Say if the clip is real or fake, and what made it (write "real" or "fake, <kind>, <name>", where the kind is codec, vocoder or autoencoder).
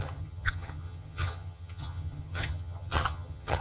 fake, vocoder, HiFi-GAN